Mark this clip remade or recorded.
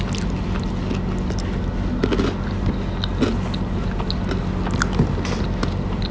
recorded